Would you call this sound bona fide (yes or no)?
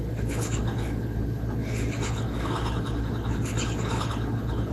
no